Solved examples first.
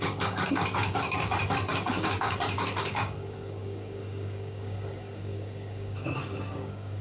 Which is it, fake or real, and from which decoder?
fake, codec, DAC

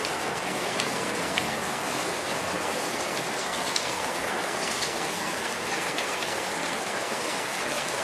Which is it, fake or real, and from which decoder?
fake, codec, SNAC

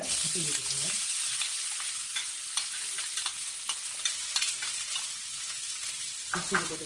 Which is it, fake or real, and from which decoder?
real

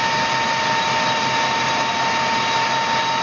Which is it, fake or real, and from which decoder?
real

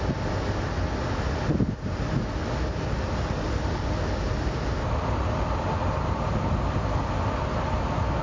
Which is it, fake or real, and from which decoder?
real